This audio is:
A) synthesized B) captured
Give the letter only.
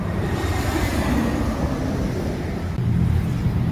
B